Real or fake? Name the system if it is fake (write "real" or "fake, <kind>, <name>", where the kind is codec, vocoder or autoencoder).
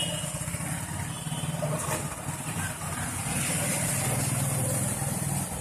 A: real